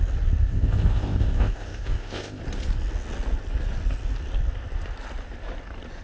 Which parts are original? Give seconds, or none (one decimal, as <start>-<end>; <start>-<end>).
0.0-0.4; 2.4-6.0